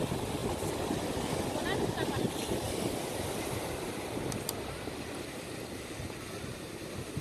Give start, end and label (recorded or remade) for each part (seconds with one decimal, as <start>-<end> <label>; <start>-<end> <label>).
0.0-7.2 recorded